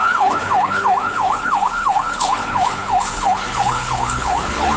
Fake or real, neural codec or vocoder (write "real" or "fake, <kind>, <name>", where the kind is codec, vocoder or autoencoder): fake, codec, HILCodec